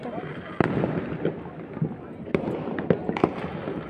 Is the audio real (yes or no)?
no